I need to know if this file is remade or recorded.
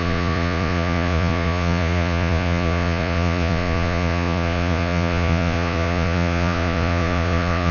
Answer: remade